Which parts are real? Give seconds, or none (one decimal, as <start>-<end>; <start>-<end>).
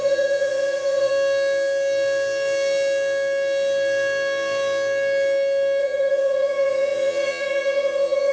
1.1-5.8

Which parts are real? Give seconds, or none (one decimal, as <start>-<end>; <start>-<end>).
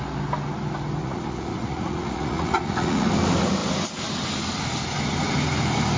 0.0-1.0; 3.1-6.0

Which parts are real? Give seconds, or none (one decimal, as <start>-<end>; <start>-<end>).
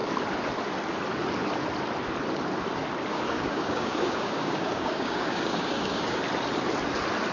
0.0-3.1; 6.2-7.3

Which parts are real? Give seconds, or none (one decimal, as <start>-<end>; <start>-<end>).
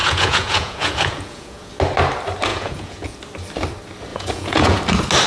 1.7-2.5; 3.2-4.1; 4.8-5.3